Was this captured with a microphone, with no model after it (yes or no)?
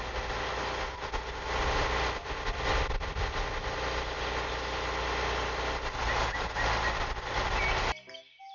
yes